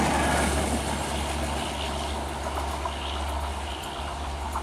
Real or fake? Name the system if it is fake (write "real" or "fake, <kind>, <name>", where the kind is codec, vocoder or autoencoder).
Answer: real